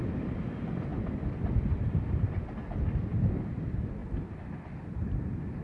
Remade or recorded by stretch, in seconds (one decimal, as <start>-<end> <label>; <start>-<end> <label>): 0.0-5.6 recorded

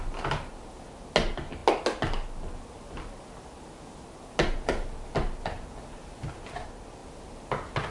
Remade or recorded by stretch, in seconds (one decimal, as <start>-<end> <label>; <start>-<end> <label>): 0.0-7.9 recorded